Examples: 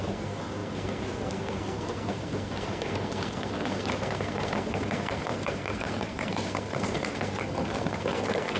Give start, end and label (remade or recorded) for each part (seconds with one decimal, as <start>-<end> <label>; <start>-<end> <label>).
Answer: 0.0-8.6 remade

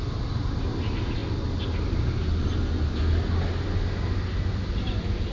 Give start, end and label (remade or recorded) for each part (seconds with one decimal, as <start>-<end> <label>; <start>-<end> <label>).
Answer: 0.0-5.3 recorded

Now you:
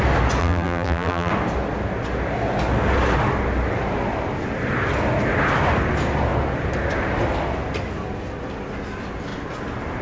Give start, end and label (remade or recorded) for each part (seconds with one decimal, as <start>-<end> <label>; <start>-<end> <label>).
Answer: 0.0-0.4 recorded; 0.4-1.3 remade; 1.3-10.0 recorded